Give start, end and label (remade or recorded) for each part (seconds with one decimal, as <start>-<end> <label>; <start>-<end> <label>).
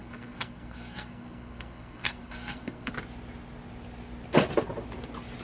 0.0-2.9 remade; 2.9-5.4 recorded